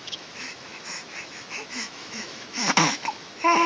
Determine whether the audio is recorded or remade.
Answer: remade